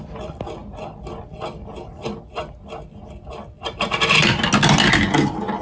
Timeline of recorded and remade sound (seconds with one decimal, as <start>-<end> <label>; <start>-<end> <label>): 0.0-5.6 recorded